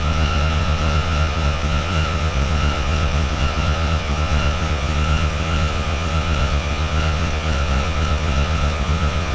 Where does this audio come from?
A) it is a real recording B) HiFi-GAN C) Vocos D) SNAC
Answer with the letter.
C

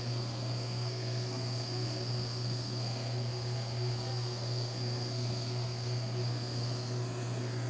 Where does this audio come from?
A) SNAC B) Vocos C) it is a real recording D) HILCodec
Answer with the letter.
A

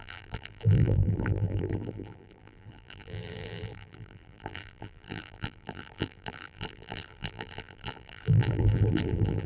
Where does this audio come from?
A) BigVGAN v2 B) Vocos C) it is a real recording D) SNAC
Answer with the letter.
A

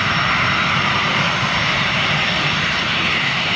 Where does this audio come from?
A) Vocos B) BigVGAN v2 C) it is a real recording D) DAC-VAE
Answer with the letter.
B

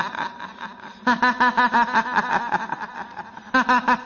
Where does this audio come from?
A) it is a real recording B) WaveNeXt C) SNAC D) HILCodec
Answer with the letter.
A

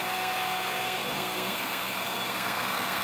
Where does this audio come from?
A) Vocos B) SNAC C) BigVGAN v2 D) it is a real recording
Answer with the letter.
B